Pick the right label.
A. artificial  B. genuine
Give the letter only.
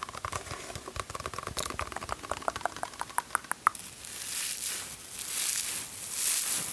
B